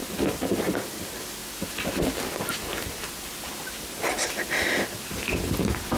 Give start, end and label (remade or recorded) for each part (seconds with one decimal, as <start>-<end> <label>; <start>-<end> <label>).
0.0-6.0 recorded